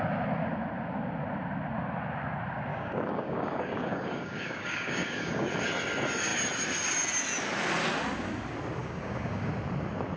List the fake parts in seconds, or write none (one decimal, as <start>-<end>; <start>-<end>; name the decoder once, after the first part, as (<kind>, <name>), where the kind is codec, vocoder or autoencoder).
2.7-5.5 (codec, DAC); 8.8-9.5